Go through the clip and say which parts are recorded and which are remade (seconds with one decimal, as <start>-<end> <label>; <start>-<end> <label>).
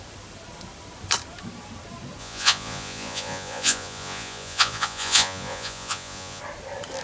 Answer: 0.0-2.2 recorded; 2.2-6.4 remade; 6.4-7.0 recorded